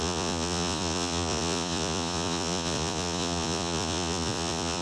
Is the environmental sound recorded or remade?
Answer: remade